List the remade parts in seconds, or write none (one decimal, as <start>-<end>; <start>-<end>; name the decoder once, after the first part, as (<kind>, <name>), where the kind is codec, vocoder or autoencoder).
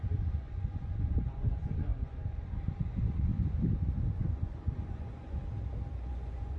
0.0-3.3 (vocoder, Vocos); 4.2-5.4; 6.1-6.6